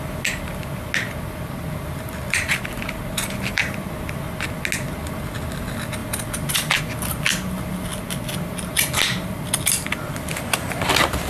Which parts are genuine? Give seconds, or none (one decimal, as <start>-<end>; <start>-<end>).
0.0-11.3